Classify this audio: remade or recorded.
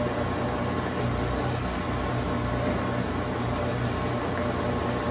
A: recorded